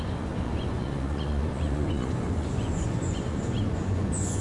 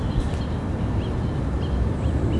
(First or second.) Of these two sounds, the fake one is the first